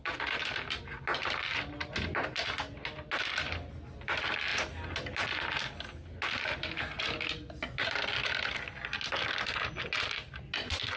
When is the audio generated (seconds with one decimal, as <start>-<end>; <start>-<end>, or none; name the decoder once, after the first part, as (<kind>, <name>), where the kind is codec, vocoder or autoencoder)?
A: none